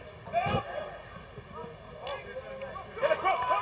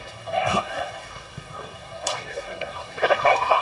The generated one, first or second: second